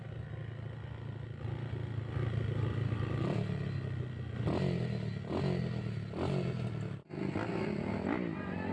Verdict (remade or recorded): recorded